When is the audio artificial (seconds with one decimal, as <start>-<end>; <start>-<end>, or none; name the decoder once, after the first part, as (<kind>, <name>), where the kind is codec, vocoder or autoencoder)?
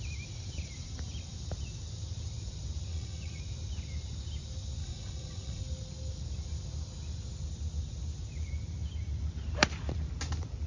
2.9-3.4 (vocoder, Vocos); 4.8-5.6